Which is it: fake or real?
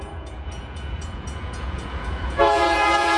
fake